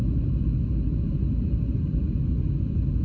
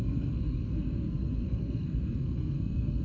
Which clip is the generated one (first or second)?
second